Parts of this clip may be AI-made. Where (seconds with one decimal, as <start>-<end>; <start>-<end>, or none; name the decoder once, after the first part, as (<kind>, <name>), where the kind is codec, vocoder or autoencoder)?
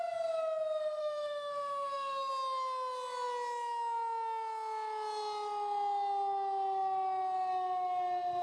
1.0-2.3 (autoencoder, DAC-VAE)